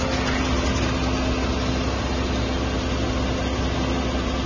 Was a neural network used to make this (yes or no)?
no